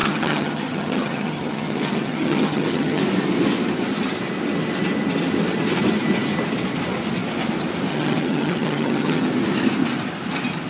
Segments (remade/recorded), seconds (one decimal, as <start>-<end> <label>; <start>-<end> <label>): 0.0-3.0 remade; 3.0-7.9 recorded; 7.9-9.3 remade; 9.3-10.7 recorded